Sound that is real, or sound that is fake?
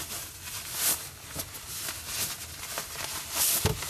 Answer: real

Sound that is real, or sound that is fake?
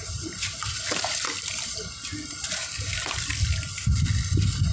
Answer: fake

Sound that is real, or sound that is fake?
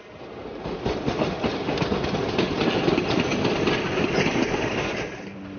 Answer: fake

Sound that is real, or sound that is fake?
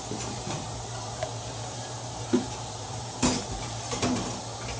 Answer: fake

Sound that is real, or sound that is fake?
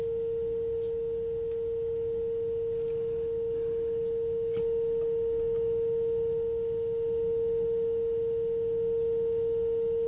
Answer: real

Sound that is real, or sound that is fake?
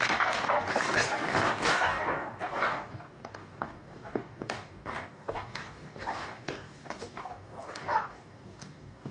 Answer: fake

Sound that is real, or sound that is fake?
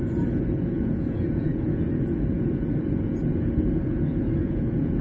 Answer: fake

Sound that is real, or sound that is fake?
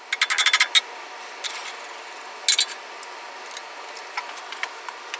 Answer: real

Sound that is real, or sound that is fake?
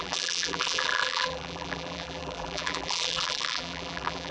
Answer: fake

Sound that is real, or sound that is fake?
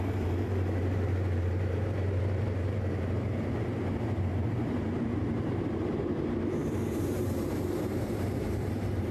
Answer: fake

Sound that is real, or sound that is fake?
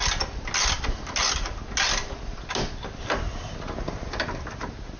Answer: real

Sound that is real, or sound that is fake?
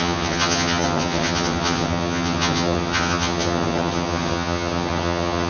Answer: fake